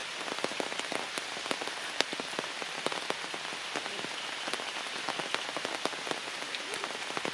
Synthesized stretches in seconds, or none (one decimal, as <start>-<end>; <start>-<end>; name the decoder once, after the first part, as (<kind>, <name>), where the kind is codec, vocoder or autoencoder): none